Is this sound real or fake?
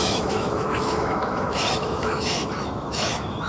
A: fake